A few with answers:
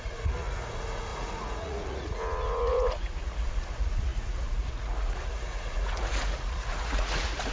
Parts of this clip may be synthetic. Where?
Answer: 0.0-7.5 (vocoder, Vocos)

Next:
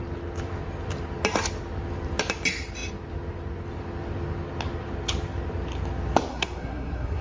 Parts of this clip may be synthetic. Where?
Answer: 6.3-7.2 (codec, SNAC)

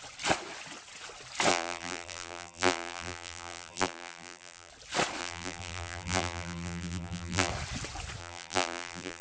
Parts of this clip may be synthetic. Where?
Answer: 1.5-4.7 (vocoder, BigVGAN v2); 5.2-7.5; 8.2-9.2

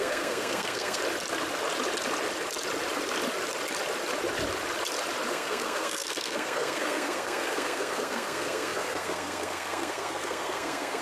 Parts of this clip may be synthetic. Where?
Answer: 0.0-1.0 (codec, SNAC); 5.3-11.0